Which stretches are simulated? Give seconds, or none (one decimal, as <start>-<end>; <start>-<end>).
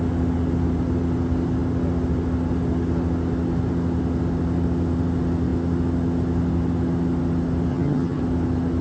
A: 7.7-8.2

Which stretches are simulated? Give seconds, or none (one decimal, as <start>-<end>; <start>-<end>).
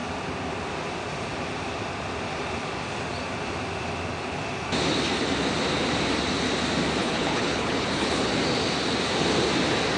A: 7.0-8.3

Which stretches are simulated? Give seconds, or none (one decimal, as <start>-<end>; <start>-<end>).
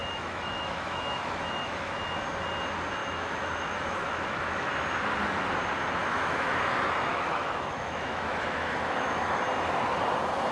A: 0.0-2.0; 3.0-4.7; 6.0-6.6; 7.1-9.4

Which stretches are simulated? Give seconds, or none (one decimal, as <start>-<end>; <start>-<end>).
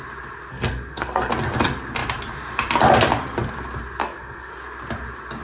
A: 0.5-1.3; 4.0-4.5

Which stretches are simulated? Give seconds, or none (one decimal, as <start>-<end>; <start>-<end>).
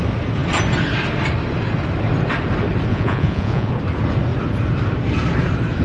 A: 2.9-3.7